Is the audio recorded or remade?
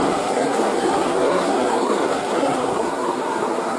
remade